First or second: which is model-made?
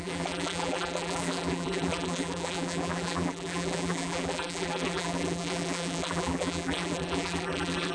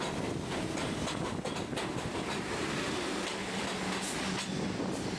first